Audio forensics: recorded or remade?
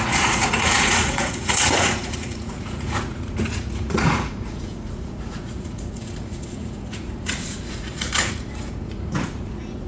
remade